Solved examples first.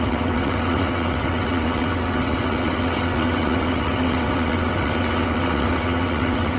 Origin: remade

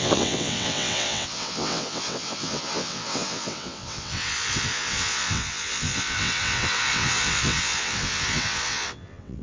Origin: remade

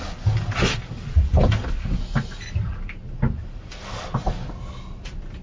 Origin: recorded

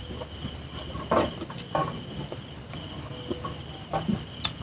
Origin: recorded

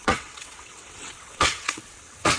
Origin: remade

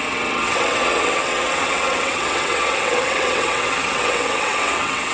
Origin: remade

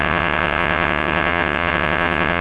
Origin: remade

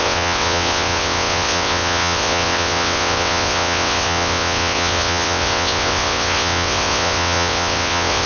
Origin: remade